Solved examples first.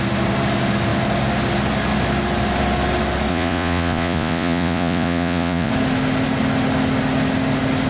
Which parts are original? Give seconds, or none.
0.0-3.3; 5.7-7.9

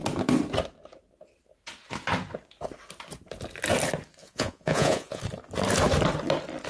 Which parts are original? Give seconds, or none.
0.0-4.2; 5.2-6.7